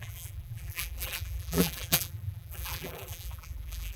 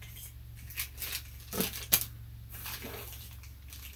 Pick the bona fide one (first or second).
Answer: second